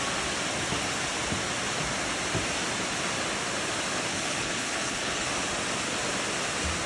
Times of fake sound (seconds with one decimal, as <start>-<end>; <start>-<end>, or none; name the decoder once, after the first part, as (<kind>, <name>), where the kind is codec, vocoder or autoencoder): 4.1-5.3 (codec, HILCodec)